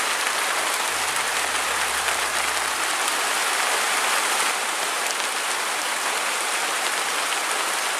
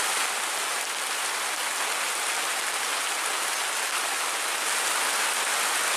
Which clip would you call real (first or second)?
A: second